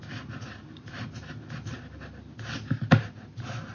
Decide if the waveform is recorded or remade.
recorded